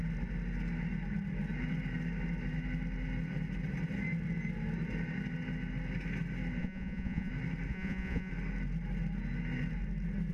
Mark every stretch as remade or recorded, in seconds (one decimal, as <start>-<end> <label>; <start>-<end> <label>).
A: 0.0-6.6 recorded; 6.6-7.3 remade; 7.3-7.7 recorded; 7.7-8.3 remade; 8.3-10.3 recorded